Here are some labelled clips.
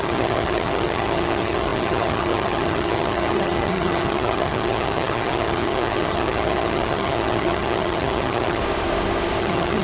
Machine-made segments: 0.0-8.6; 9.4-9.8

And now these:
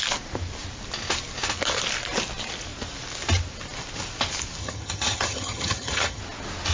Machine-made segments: 4.6-6.2

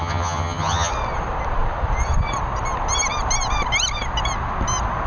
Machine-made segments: 0.0-0.9

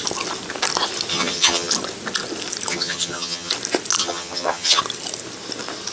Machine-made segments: 1.1-1.7; 2.7-3.5; 4.0-4.8

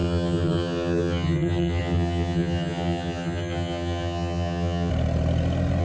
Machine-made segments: 0.0-4.9

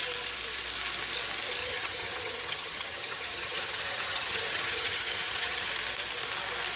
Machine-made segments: 1.6-5.7

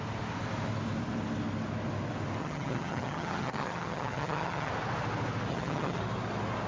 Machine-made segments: 2.4-4.7; 5.5-6.0